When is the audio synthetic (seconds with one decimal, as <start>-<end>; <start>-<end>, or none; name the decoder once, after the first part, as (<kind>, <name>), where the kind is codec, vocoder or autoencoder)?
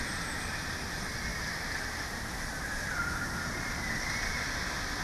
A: 1.3-4.3 (vocoder, BigVGAN v2)